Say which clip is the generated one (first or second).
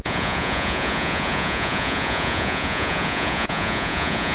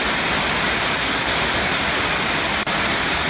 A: first